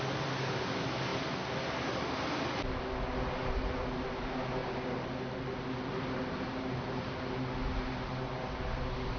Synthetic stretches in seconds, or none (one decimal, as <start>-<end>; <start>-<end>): none

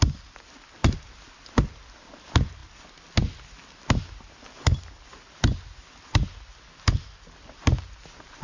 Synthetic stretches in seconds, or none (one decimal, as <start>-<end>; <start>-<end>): none